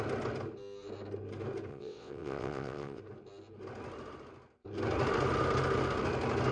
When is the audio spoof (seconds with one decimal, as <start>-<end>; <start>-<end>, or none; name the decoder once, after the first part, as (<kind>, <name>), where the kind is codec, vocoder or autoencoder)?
1.7-3.0 (vocoder, WaveNeXt)